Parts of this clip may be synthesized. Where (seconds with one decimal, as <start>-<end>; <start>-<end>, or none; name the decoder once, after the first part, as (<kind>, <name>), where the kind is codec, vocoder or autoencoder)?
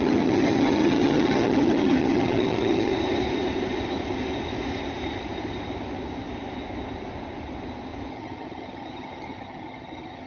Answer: 0.0-2.9 (vocoder, HiFi-GAN); 8.1-10.3